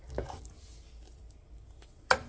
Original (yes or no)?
yes